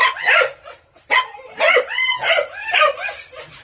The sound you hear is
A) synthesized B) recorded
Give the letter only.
B